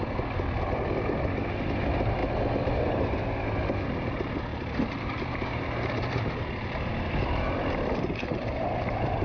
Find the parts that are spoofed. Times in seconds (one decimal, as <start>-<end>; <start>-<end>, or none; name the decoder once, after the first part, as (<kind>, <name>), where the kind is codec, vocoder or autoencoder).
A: 4.5-6.9 (vocoder, BigVGAN v2)